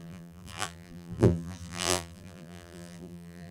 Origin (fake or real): fake